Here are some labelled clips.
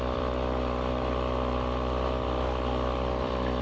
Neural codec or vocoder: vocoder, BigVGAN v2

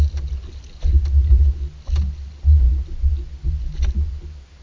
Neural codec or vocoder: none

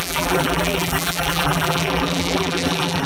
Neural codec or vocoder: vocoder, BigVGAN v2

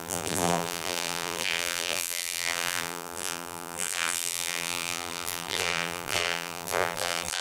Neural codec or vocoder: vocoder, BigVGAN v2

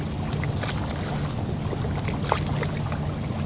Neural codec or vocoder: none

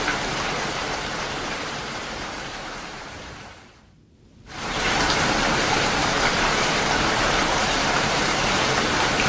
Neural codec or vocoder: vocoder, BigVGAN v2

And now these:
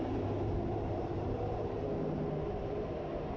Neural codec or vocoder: vocoder, BigVGAN v2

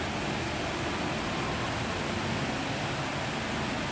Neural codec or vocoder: none